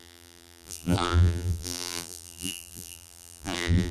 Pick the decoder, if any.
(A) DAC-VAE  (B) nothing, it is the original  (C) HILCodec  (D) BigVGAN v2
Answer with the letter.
D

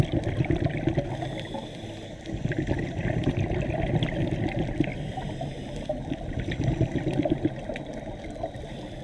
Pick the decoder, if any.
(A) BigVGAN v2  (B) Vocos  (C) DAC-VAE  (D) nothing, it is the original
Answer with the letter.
D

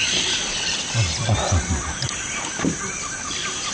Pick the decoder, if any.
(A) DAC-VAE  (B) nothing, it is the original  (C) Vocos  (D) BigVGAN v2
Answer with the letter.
D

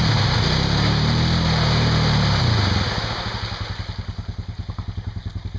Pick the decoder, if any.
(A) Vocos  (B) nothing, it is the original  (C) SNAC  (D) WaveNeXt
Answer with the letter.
B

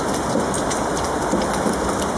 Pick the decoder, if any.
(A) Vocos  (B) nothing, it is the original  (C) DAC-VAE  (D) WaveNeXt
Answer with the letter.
B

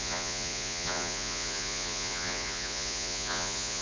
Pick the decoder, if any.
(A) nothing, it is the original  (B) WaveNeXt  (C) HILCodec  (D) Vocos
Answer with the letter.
D